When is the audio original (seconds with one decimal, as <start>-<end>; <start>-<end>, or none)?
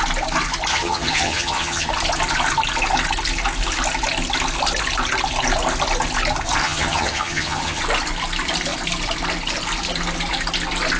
0.0-0.7; 1.9-6.6; 7.8-11.0